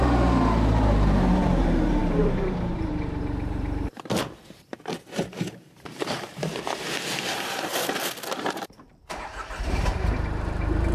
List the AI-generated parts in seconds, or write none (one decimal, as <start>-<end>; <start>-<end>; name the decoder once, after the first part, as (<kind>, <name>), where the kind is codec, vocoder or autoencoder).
0.0-7.7 (vocoder, BigVGAN v2); 8.3-10.9